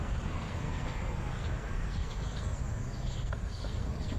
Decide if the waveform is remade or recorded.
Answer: remade